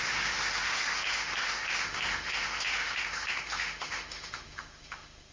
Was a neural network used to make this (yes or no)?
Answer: yes